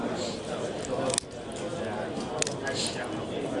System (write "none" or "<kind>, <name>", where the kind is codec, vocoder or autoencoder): none